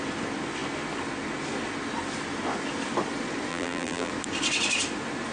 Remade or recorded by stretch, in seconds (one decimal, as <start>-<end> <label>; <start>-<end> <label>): 0.0-3.5 recorded; 3.5-4.1 remade; 4.1-5.3 recorded